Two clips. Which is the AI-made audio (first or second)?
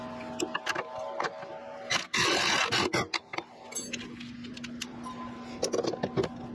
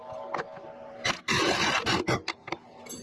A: second